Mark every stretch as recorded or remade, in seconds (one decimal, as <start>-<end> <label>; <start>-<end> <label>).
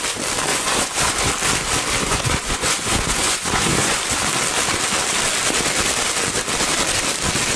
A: 0.0-0.5 recorded; 0.5-1.3 remade; 1.3-2.0 recorded; 2.0-4.0 remade; 4.0-7.6 recorded